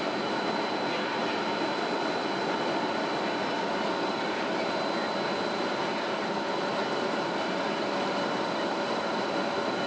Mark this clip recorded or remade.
recorded